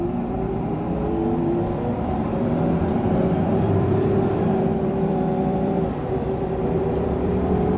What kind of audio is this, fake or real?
fake